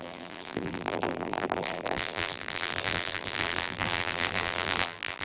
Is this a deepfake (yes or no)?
yes